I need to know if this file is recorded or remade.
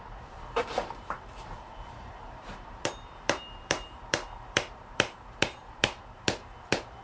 remade